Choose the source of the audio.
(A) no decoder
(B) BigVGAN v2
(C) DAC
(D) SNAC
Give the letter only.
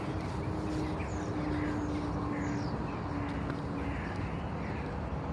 A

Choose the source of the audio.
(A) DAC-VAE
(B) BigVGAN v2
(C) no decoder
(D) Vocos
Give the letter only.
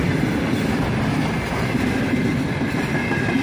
B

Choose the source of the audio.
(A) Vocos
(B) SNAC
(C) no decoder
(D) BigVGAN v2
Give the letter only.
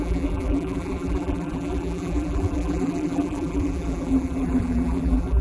D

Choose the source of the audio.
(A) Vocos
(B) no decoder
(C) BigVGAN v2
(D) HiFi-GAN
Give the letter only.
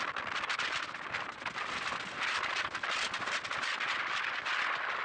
B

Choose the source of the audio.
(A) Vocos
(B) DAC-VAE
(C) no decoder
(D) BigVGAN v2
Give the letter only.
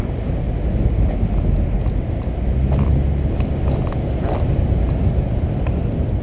C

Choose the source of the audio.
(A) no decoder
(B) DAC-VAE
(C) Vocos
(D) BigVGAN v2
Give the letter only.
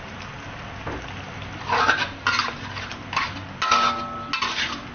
A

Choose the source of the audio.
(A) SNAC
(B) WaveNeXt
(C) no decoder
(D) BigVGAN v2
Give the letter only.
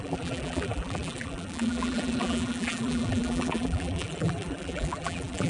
D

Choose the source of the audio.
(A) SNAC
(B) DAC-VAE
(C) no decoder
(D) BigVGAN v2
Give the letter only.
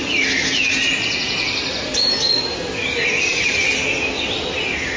C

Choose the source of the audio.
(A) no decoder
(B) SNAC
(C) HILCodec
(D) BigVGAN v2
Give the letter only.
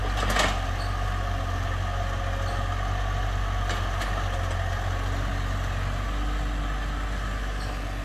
A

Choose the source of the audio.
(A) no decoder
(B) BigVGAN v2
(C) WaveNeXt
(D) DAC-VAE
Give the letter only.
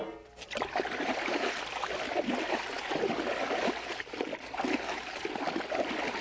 A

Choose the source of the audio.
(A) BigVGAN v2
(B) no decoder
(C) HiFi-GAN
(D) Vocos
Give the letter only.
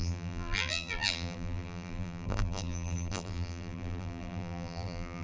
A